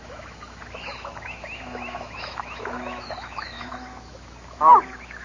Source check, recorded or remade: remade